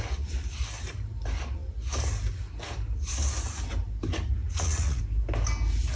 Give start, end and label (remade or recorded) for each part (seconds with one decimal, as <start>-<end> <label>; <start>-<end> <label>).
0.0-4.4 recorded; 4.4-5.0 remade; 5.0-6.0 recorded